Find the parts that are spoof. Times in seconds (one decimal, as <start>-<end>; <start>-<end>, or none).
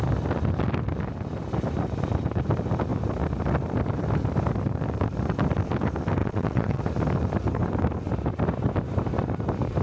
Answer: 6.2-6.8